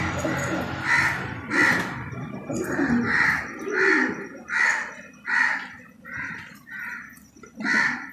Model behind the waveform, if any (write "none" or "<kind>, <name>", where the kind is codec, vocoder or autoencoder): none